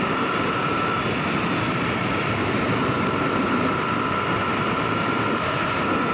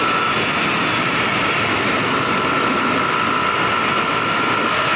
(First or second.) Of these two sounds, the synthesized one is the first